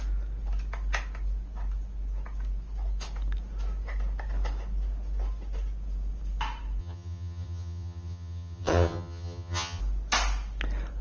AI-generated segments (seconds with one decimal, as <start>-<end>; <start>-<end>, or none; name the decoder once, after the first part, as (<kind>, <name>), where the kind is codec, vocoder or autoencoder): 6.8-9.8 (vocoder, HiFi-GAN)